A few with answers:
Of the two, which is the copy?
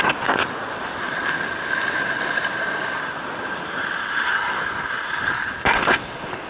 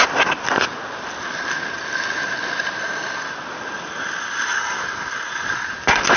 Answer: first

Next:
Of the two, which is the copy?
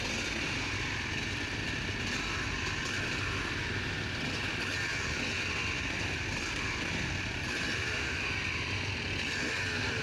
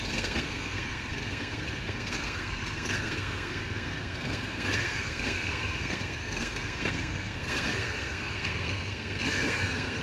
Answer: second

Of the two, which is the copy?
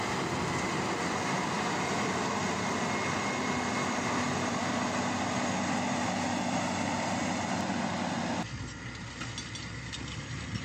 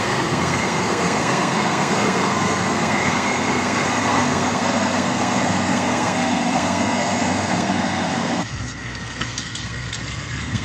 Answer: second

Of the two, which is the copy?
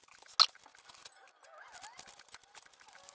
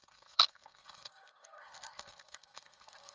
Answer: second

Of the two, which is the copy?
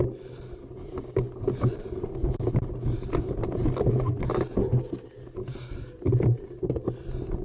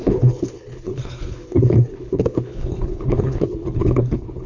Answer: second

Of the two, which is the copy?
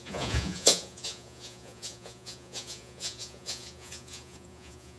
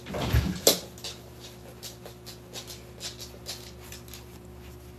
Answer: first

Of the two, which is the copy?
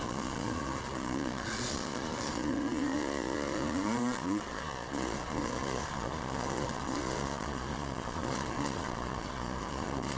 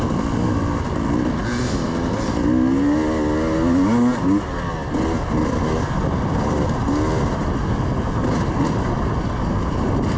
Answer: first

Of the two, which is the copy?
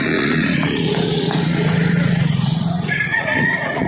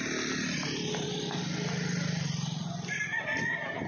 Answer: first